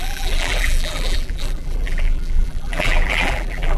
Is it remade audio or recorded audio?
remade